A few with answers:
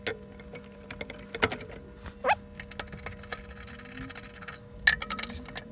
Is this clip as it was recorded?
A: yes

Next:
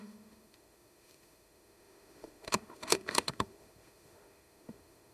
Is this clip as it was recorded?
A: no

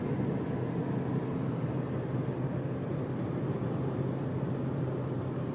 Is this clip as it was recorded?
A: no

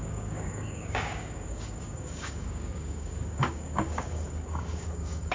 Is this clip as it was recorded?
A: no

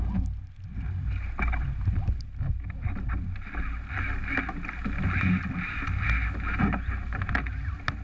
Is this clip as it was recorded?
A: yes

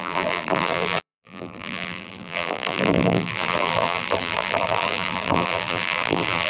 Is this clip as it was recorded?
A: no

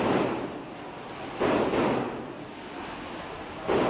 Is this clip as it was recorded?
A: yes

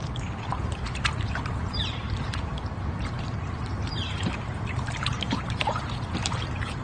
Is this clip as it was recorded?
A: no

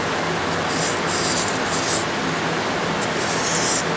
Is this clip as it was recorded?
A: yes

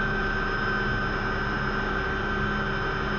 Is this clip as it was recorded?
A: yes